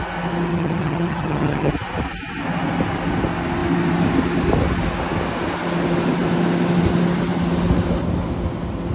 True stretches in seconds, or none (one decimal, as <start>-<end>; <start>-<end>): 0.0-0.5; 1.7-8.9